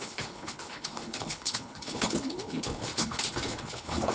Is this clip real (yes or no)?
no